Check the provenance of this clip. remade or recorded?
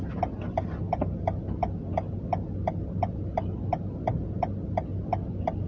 recorded